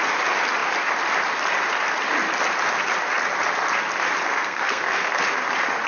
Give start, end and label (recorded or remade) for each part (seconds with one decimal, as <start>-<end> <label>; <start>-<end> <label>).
0.0-4.3 recorded; 4.3-5.2 remade; 5.2-5.9 recorded